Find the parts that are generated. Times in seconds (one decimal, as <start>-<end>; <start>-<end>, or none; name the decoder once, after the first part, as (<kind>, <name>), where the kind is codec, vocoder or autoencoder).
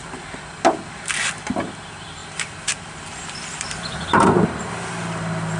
2.2-4.7 (vocoder, BigVGAN v2)